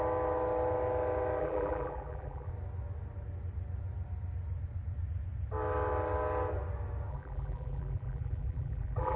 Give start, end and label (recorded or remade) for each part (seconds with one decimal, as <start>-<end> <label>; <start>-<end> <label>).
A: 0.0-1.4 recorded; 1.4-2.5 remade; 2.5-7.1 recorded; 7.1-9.2 remade